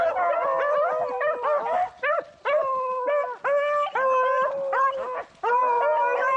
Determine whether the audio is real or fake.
real